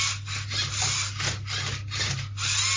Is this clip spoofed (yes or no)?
no